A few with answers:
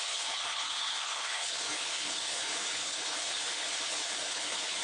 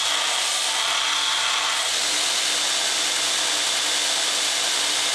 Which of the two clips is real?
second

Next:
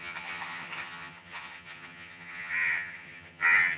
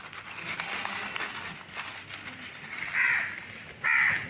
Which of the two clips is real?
second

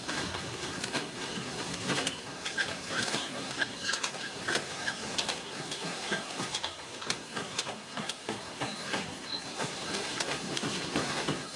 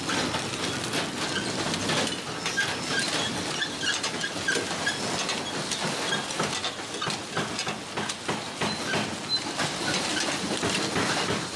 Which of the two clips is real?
second